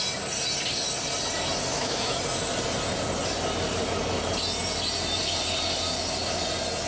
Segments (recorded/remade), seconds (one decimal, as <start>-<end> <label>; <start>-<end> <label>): 0.0-1.7 recorded; 1.7-2.2 remade; 2.2-6.9 recorded